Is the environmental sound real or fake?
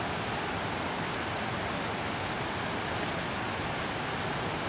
real